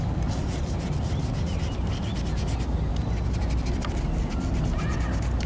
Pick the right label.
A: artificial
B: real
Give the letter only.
B